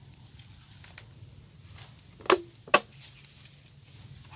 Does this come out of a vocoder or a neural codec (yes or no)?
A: no